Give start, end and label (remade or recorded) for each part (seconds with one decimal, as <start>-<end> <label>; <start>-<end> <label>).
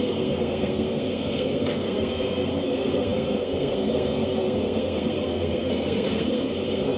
0.0-7.0 remade